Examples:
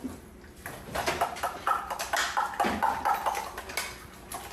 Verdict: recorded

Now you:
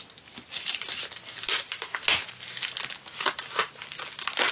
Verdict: recorded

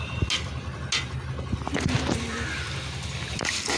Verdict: recorded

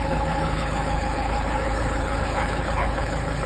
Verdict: remade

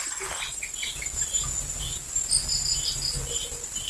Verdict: recorded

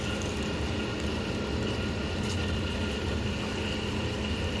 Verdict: recorded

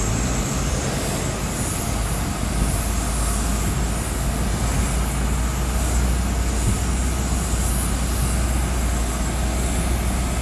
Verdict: recorded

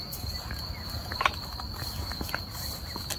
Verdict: recorded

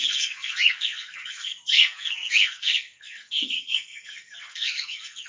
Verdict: remade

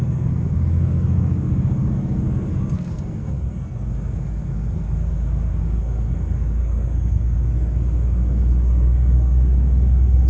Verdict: remade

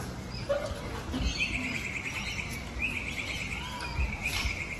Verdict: recorded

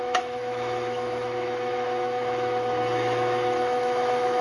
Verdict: remade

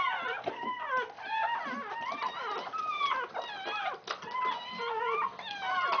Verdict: recorded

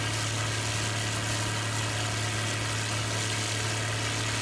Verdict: recorded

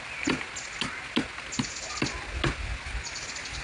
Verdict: recorded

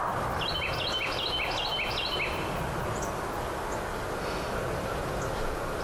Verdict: recorded